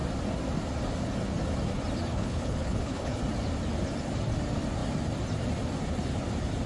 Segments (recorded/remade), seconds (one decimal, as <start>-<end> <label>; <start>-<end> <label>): 0.0-2.1 recorded; 2.1-3.2 remade; 3.2-6.7 recorded